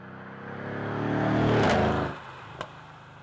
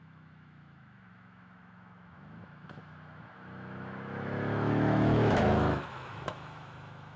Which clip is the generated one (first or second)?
second